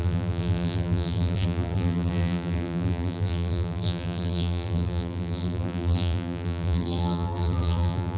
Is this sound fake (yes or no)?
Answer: yes